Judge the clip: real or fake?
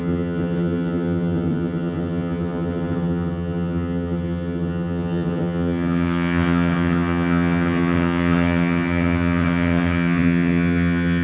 fake